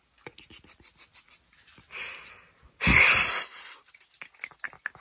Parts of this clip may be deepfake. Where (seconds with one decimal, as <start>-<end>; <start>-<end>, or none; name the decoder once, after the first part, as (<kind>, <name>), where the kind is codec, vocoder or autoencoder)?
none